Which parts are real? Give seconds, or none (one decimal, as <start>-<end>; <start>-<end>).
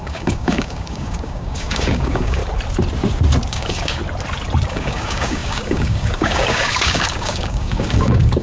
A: 2.4-3.5; 4.0-4.7